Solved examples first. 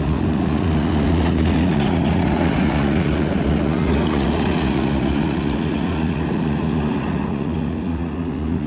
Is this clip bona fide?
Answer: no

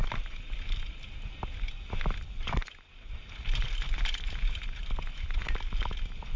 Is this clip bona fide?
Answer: yes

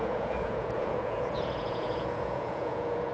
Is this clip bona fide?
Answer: no